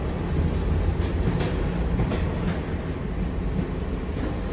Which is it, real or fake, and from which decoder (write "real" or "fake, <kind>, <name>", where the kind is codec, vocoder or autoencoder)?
real